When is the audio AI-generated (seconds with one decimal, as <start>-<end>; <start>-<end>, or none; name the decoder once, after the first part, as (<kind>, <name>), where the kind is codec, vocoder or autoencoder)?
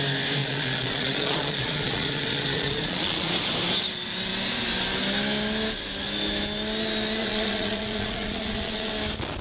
0.4-3.3 (vocoder, Vocos); 7.2-8.9